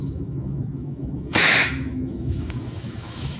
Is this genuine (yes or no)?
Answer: no